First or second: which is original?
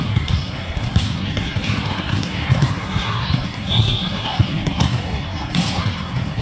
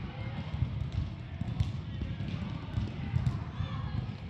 second